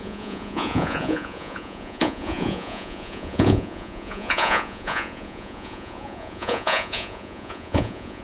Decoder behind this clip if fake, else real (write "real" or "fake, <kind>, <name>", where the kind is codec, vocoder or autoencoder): fake, vocoder, Vocos